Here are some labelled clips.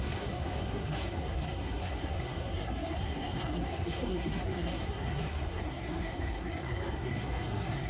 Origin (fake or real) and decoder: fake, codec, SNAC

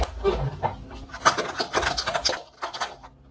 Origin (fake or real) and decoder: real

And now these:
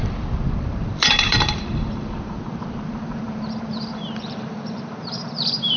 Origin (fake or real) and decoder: fake, vocoder, BigVGAN v2